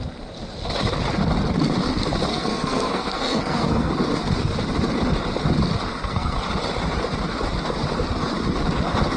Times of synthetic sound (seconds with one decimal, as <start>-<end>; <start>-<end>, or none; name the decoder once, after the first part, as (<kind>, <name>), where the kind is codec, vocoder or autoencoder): 2.3-3.9 (codec, SNAC); 5.9-6.4